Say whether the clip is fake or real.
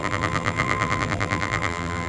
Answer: fake